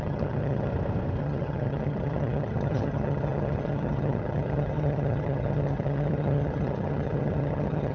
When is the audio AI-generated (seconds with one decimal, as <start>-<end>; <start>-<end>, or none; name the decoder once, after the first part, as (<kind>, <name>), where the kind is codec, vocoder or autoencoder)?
0.0-0.7 (vocoder, HiFi-GAN); 1.2-7.9